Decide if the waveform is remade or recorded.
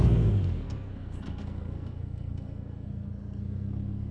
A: remade